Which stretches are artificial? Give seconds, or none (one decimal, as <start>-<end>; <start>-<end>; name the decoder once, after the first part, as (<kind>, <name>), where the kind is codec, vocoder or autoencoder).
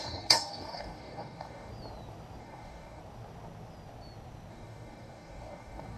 0.0-1.7 (codec, DAC); 2.4-3.0; 4.5-6.0